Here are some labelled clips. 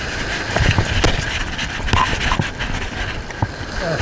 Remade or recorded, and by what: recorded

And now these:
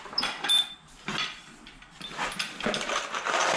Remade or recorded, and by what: recorded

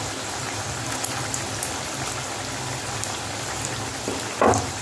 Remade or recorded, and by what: recorded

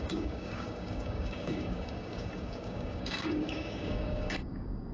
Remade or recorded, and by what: remade, codec, DAC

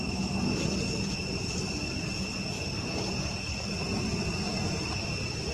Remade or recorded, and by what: recorded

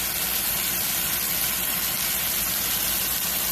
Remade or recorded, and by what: recorded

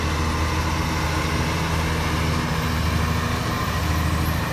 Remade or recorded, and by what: recorded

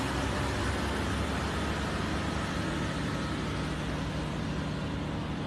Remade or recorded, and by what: recorded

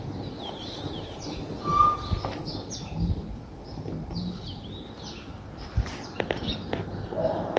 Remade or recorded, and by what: recorded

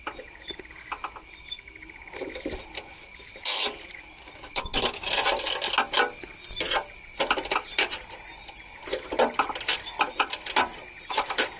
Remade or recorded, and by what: recorded